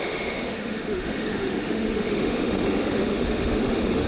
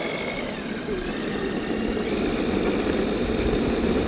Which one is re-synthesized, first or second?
first